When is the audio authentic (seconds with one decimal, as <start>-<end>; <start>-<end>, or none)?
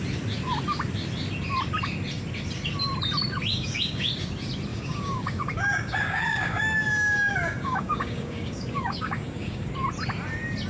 0.0-3.5; 4.1-4.7; 9.7-10.7